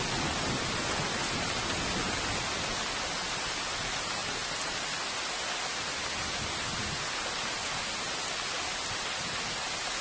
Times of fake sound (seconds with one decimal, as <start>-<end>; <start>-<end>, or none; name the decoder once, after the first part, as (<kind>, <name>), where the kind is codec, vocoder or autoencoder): none